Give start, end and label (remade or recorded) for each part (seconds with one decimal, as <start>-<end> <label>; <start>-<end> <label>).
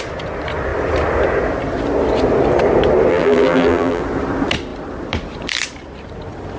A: 0.0-3.1 recorded; 3.1-4.0 remade; 4.0-6.6 recorded